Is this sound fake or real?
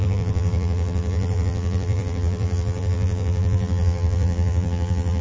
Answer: fake